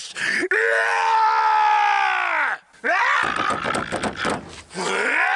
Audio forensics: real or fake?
real